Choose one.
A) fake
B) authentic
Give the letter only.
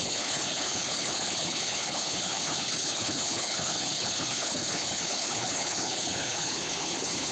A